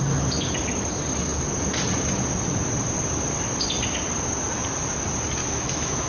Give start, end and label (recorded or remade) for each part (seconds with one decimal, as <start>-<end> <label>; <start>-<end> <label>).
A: 0.0-5.4 recorded; 5.4-6.1 remade